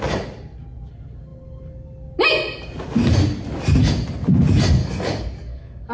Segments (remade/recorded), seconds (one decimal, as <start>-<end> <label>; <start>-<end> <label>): 0.0-4.8 recorded; 4.8-5.9 remade